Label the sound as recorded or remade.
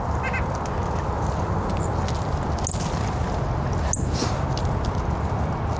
recorded